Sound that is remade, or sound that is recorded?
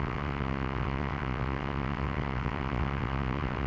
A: remade